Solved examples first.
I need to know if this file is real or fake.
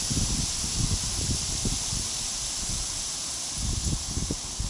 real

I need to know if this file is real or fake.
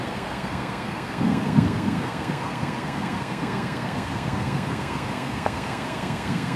fake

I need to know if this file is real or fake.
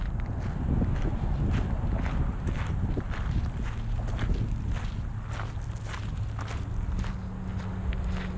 real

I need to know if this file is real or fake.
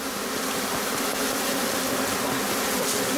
real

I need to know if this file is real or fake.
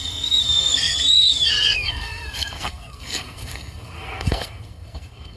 fake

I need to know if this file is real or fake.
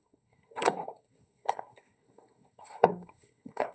fake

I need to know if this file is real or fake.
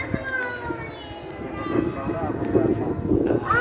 real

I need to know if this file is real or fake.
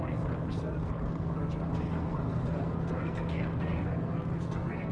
fake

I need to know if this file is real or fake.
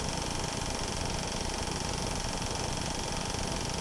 real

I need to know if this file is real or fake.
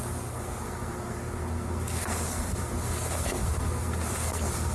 fake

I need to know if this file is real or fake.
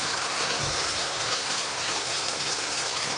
fake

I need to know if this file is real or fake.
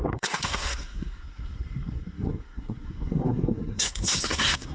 fake